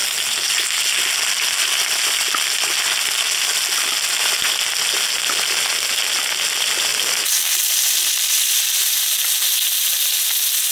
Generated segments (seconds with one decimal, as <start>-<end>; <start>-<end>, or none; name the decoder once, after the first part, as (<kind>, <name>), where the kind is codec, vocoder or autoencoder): 6.9-8.6 (vocoder, BigVGAN v2)